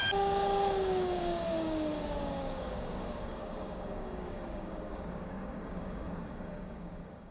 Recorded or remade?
remade